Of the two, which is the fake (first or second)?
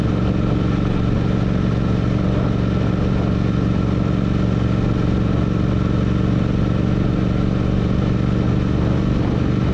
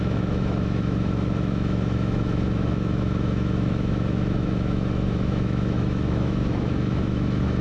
second